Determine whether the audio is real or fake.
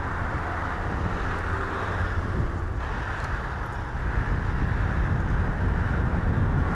real